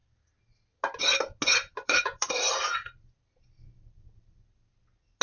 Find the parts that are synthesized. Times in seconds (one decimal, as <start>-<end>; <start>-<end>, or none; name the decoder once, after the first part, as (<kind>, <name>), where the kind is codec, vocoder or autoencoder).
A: 1.7-4.8 (vocoder, BigVGAN v2)